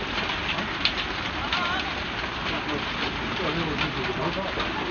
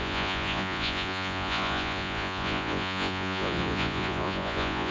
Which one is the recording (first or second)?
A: first